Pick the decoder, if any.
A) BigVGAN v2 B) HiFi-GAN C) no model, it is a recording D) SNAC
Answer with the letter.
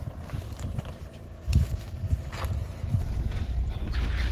A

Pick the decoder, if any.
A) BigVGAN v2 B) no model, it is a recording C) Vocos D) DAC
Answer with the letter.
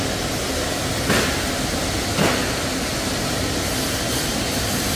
B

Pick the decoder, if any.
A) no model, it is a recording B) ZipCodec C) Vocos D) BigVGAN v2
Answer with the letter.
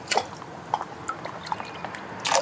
A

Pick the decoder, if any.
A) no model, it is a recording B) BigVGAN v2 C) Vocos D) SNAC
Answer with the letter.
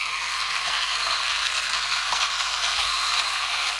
D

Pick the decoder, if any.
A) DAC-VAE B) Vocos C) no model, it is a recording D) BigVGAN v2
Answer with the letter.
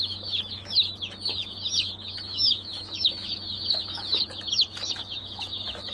A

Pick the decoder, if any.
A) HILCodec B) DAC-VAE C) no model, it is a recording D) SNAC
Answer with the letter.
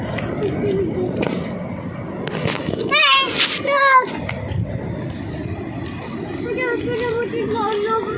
C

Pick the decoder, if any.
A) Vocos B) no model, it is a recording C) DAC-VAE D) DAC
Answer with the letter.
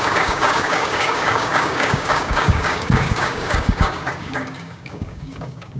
D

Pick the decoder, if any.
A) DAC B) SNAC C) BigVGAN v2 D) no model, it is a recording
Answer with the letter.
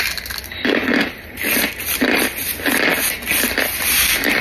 D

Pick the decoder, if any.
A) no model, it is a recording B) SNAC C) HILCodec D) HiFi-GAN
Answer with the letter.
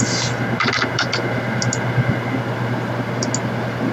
A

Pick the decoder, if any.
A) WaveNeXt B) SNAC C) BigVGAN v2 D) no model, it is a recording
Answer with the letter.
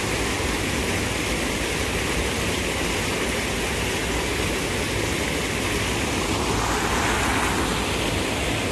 D